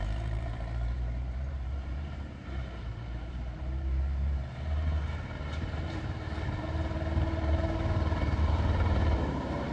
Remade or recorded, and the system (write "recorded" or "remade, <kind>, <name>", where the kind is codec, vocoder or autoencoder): remade, vocoder, BigVGAN v2